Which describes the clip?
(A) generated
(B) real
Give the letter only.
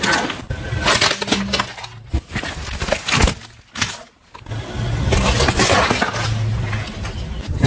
B